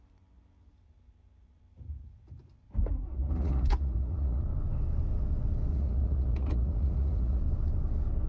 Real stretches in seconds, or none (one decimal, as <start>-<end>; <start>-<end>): 0.0-3.1; 4.4-5.7; 7.4-8.3